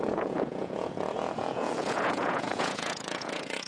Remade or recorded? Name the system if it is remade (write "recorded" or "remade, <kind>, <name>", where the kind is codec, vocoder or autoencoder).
remade, vocoder, Vocos